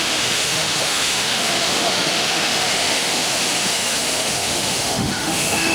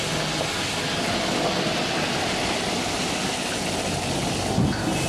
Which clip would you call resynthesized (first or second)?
first